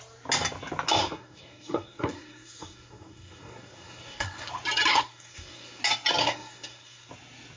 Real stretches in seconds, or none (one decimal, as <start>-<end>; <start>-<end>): 0.0-1.0; 4.5-4.9; 5.8-6.2; 7.1-7.6